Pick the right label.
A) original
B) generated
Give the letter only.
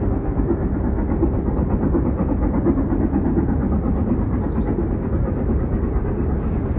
A